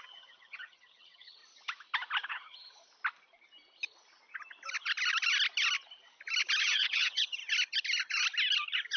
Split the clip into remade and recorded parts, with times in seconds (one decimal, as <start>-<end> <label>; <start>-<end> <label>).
0.0-1.4 remade; 1.4-2.3 recorded; 2.3-2.8 remade; 2.8-6.6 recorded; 6.6-7.4 remade; 7.4-9.0 recorded